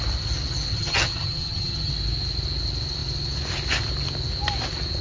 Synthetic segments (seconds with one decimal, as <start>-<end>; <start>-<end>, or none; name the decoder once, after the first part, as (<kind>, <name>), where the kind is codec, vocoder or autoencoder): 0.7-1.9 (vocoder, HiFi-GAN)